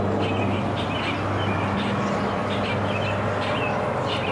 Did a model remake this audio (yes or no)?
no